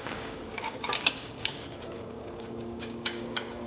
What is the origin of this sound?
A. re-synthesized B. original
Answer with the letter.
A